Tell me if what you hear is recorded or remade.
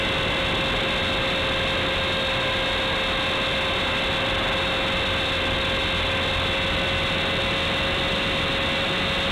recorded